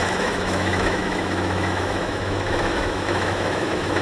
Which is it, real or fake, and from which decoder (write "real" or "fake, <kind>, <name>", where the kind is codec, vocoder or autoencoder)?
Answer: fake, autoencoder, DAC-VAE